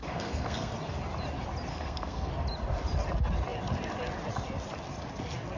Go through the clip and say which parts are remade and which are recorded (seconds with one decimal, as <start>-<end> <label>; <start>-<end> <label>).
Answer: 0.0-0.7 remade; 0.7-1.7 recorded; 1.7-2.3 remade; 2.3-5.6 recorded